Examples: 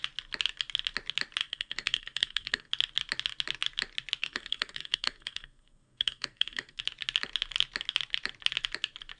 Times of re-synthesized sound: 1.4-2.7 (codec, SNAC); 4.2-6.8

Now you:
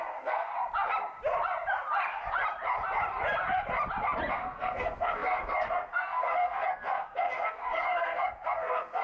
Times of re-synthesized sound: 0.0-0.5 (codec, SNAC); 4.3-9.0

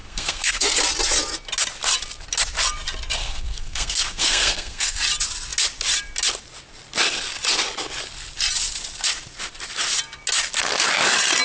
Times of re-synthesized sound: 0.0-0.8 (codec, SNAC); 3.2-5.0